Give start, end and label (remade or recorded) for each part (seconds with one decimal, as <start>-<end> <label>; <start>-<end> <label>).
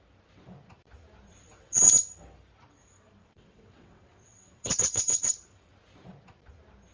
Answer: 0.0-1.3 recorded; 1.3-1.9 remade; 1.9-3.2 recorded; 3.2-5.7 remade; 5.7-6.9 recorded